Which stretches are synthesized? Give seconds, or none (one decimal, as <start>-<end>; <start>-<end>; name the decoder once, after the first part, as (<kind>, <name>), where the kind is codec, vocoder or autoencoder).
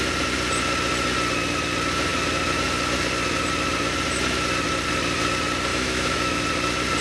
5.7-6.4 (autoencoder, DAC-VAE)